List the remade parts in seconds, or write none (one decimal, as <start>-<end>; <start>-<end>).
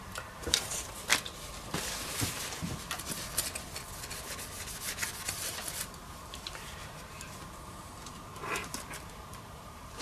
0.0-1.1; 5.2-10.0